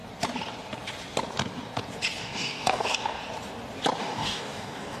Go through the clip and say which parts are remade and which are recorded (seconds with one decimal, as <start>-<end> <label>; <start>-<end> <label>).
0.0-2.2 recorded; 2.2-3.2 remade; 3.2-4.0 recorded; 4.0-5.0 remade